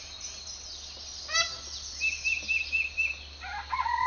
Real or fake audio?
real